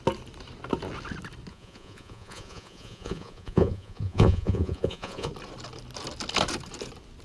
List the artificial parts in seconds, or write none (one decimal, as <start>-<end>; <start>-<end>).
1.5-5.3